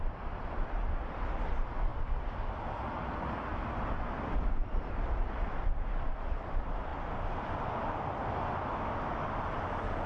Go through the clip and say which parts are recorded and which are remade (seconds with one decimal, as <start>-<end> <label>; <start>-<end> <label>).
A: 0.0-6.9 remade; 6.9-9.4 recorded; 9.4-10.1 remade